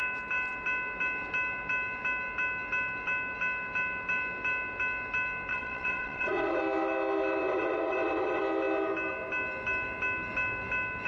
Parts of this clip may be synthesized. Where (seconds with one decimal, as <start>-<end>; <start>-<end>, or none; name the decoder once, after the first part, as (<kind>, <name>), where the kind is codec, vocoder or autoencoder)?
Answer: 5.5-6.6 (vocoder, WaveNeXt); 7.4-8.4